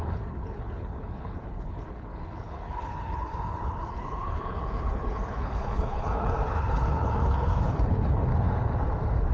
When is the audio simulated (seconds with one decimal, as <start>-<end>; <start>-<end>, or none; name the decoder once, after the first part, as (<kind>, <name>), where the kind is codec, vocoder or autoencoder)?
0.0-8.3 (codec, HILCodec)